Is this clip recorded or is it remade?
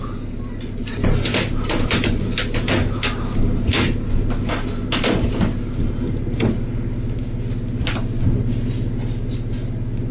recorded